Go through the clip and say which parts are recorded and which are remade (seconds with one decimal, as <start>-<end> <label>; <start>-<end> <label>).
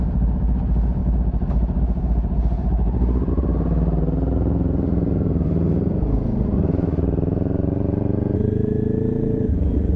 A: 0.0-10.0 recorded